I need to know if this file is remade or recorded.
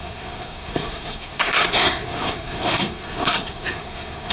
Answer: remade